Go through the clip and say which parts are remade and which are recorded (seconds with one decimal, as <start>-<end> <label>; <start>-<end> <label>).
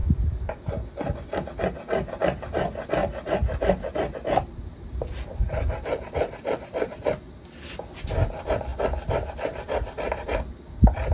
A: 0.0-0.5 remade; 0.5-3.0 recorded; 3.0-7.2 remade; 7.2-11.1 recorded